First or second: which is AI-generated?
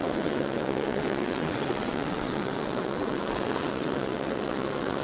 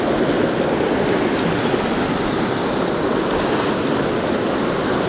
first